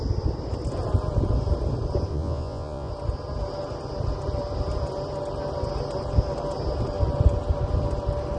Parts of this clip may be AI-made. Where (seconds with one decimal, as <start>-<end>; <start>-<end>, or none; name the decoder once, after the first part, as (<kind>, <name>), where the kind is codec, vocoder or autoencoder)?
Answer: 2.1-2.9 (vocoder, Vocos)